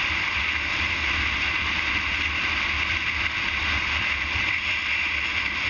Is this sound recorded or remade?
recorded